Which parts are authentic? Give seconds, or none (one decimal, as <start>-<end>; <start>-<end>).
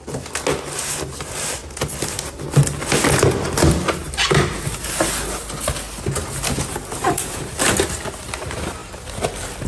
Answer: 0.0-9.7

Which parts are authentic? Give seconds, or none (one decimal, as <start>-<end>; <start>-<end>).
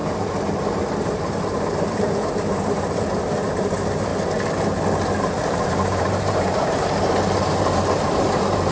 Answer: 4.1-5.2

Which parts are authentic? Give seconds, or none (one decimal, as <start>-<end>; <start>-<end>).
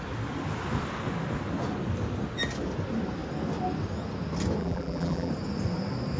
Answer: 0.0-4.6; 5.3-6.2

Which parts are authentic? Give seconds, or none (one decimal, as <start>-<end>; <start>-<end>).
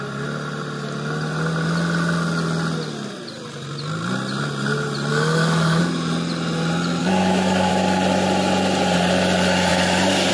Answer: 0.0-5.1; 5.8-7.0; 7.7-10.3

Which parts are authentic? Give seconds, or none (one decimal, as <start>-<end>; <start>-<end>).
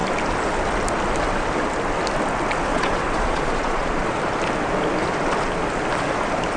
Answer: 0.0-2.7; 4.2-6.6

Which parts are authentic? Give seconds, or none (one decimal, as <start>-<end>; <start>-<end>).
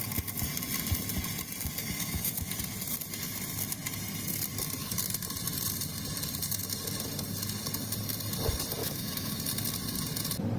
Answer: 0.0-1.8; 2.5-8.8; 9.4-10.6